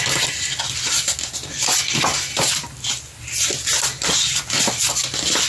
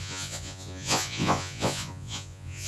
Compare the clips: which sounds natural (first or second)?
first